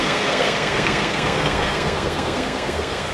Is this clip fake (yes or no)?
yes